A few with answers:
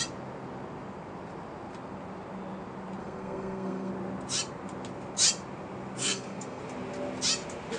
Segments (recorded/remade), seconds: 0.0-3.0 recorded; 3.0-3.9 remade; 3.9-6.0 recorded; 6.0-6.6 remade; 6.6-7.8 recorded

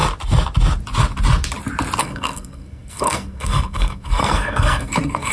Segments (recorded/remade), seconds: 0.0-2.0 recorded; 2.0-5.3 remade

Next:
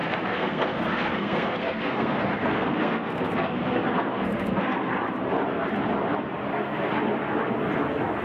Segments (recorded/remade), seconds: 0.0-4.9 remade; 4.9-6.5 recorded; 6.5-7.0 remade; 7.0-8.2 recorded

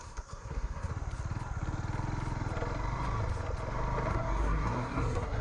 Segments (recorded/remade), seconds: 0.0-0.9 remade; 0.9-4.1 recorded; 4.1-5.4 remade

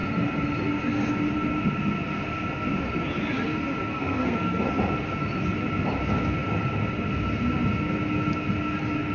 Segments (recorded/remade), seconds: 0.0-3.9 recorded; 3.9-4.7 remade; 4.7-9.1 recorded

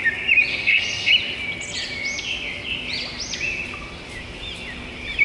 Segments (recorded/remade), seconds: 0.0-0.5 recorded; 0.5-1.1 remade; 1.1-5.2 recorded